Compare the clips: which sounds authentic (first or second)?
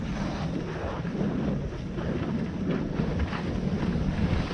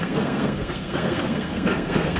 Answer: first